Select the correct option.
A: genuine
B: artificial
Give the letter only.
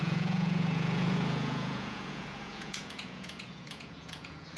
B